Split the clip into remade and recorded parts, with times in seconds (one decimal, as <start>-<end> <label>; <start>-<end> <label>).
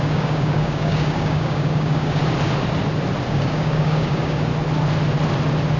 0.0-2.2 remade; 2.2-3.3 recorded; 3.3-4.5 remade; 4.5-5.8 recorded